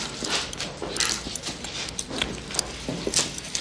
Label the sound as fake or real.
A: real